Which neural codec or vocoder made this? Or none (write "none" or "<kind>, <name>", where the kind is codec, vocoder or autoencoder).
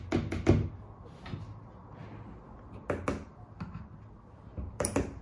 none